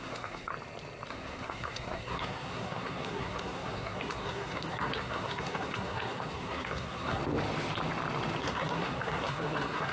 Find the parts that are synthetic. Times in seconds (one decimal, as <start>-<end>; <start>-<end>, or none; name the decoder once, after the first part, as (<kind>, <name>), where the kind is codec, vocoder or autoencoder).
0.0-0.5 (codec, SNAC); 1.1-7.2; 8.4-9.9